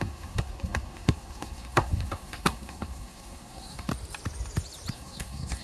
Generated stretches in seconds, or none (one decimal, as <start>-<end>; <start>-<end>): 0.0-3.9; 4.9-5.6